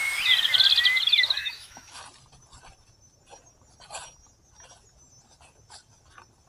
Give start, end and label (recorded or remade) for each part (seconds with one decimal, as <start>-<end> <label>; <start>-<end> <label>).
0.0-1.4 recorded; 1.4-2.0 remade; 2.0-6.5 recorded